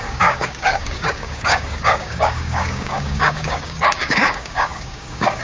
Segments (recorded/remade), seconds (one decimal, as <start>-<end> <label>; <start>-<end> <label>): 0.0-5.4 remade